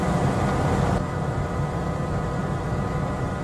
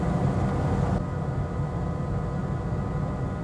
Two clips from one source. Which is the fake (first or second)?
first